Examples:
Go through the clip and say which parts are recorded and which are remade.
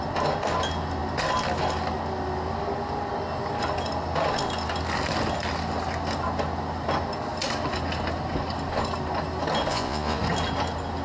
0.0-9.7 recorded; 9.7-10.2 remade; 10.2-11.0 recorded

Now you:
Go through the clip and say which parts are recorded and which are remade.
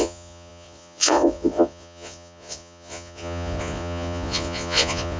0.0-5.2 remade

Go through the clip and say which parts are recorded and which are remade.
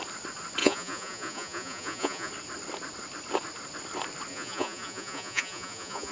0.0-0.6 recorded; 0.6-2.3 remade; 2.3-4.3 recorded; 4.3-6.1 remade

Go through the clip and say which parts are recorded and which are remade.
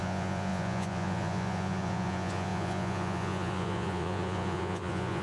0.0-5.2 remade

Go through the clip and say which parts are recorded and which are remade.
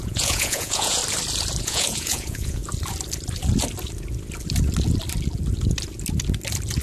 0.0-1.0 remade; 1.0-1.6 recorded; 1.6-2.6 remade; 2.6-6.8 recorded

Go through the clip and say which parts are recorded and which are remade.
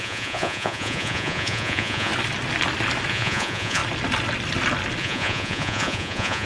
0.0-2.1 remade; 2.1-3.1 recorded; 3.1-3.8 remade; 3.8-5.0 recorded; 5.0-6.5 remade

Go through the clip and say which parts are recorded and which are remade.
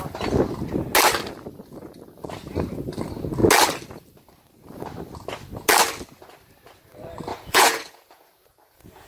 0.0-7.3 recorded; 7.3-9.1 remade